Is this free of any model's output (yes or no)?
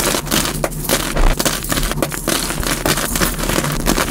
yes